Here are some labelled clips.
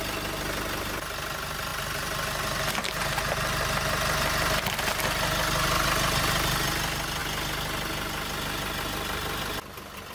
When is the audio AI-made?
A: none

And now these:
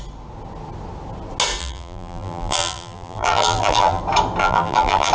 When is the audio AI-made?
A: 1.6-4.0 (vocoder, BigVGAN v2); 4.4-5.1

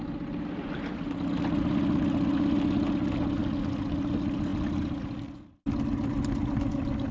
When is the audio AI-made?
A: none